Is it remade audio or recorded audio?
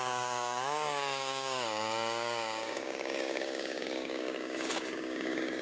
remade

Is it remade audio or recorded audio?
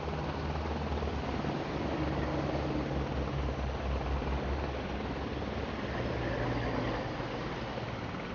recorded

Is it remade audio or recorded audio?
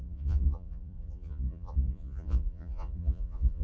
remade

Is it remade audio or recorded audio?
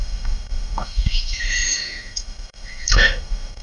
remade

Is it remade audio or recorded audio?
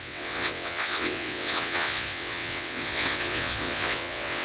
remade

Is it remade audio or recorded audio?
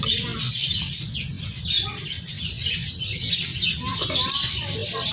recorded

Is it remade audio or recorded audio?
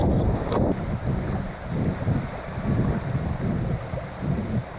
recorded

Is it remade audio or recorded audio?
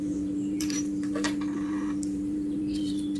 remade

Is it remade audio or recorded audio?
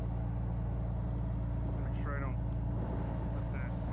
recorded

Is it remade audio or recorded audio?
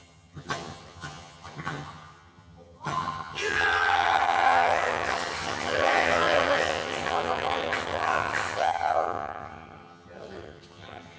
remade